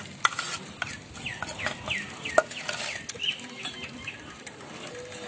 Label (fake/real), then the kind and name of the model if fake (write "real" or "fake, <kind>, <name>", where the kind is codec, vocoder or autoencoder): real